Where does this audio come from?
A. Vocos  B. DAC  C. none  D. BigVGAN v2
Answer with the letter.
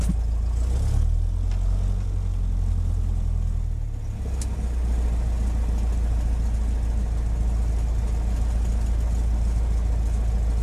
C